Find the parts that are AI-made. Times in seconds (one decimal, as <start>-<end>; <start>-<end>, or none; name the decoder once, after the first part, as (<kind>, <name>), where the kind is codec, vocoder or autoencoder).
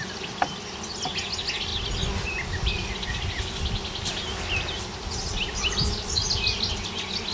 none